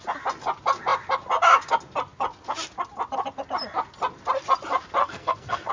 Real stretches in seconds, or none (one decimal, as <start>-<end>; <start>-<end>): 0.0-5.0